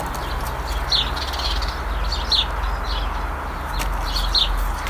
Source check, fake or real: real